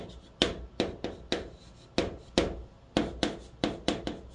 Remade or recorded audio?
recorded